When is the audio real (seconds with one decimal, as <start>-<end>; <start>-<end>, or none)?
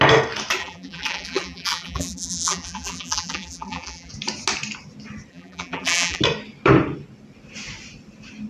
0.0-0.6; 4.1-5.3; 6.2-8.5